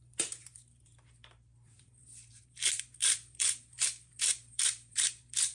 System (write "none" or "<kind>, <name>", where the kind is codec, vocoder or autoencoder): vocoder, BigVGAN v2